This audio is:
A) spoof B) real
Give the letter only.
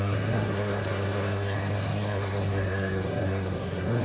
A